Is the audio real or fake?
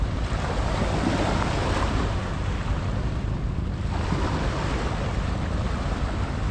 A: real